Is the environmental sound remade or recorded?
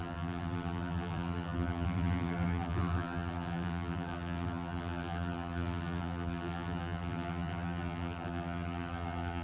remade